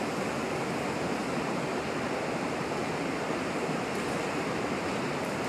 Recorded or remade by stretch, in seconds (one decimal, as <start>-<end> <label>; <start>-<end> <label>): 0.0-2.8 recorded; 2.8-5.5 remade